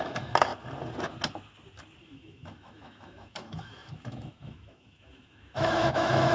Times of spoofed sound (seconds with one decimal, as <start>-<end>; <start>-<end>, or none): 0.0-0.5; 2.0-6.3